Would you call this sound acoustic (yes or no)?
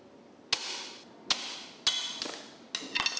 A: yes